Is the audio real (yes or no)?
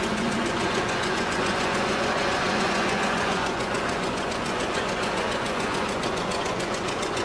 no